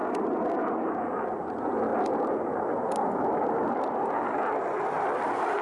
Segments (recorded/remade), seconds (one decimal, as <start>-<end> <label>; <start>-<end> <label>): 0.0-5.6 recorded